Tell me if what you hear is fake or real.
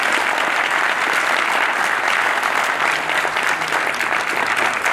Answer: real